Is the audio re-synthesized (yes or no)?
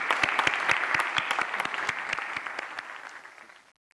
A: no